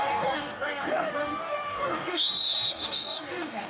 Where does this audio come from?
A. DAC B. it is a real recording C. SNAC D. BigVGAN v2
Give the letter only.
A